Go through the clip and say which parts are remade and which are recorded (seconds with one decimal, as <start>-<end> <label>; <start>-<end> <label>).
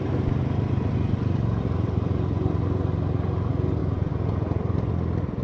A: 0.0-5.4 recorded